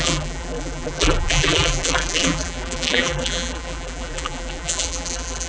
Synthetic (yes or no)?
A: yes